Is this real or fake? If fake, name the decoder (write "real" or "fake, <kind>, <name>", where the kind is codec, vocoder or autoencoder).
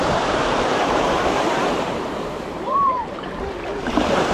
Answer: fake, vocoder, BigVGAN v2